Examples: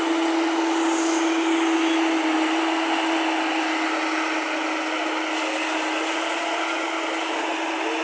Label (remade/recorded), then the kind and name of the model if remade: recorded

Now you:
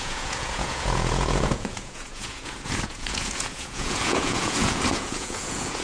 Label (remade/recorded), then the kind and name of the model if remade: remade, vocoder, Vocos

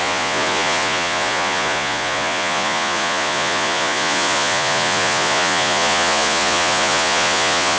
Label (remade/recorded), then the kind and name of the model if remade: remade, vocoder, Vocos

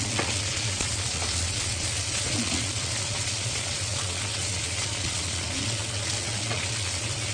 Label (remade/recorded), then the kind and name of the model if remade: remade, vocoder, Vocos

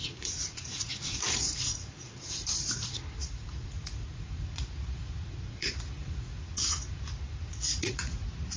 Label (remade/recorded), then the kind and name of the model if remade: remade, vocoder, Vocos